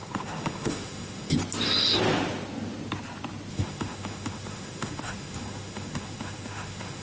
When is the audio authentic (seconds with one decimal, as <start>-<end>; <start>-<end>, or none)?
1.4-3.5